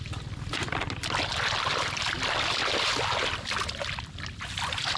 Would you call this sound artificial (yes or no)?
no